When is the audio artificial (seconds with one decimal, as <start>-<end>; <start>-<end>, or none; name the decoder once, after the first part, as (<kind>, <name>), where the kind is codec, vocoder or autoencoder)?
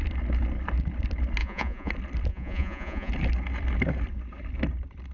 1.4-1.9 (vocoder, Vocos); 2.3-3.1